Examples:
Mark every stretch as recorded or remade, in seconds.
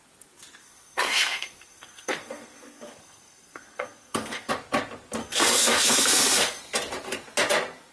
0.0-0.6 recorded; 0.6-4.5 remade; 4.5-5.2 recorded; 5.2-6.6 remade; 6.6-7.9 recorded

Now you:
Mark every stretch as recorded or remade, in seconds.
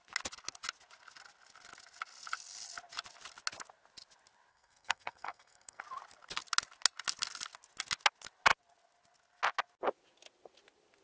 0.0-4.5 recorded; 4.5-5.8 remade; 5.8-11.0 recorded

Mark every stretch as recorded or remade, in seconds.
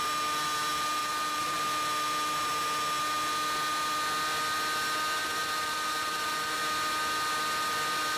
0.0-1.0 recorded; 1.0-1.6 remade; 1.6-5.2 recorded; 5.2-6.6 remade; 6.6-8.2 recorded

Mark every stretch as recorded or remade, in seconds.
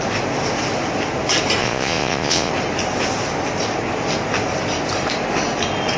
0.0-1.6 recorded; 1.6-2.5 remade; 2.5-6.0 recorded